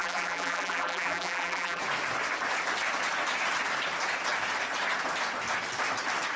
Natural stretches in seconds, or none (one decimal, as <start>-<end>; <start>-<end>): 1.8-6.4